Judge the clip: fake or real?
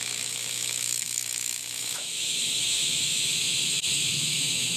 fake